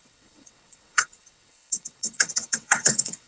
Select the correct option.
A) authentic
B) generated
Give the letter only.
B